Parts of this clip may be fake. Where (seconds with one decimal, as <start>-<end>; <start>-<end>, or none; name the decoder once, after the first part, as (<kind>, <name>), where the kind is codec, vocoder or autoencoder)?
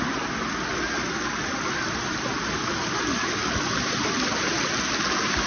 none